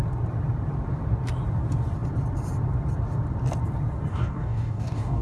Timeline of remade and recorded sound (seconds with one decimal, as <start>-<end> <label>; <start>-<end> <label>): 0.0-4.1 recorded; 4.1-5.2 remade